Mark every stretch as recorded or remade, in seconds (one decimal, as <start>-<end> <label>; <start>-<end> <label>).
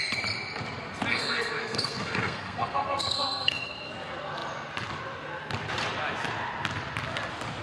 0.0-1.1 recorded; 1.1-3.9 remade; 3.9-7.6 recorded